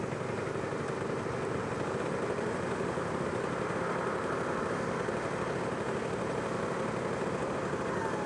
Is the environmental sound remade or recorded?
recorded